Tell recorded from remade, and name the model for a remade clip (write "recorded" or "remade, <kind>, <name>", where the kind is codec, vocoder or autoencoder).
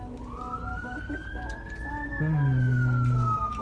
recorded